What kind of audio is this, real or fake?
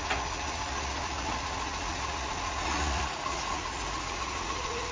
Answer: fake